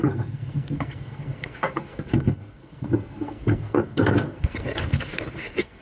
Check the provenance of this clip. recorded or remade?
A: remade